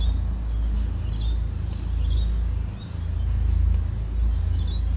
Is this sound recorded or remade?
recorded